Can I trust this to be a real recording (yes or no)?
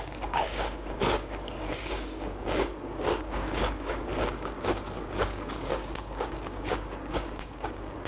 no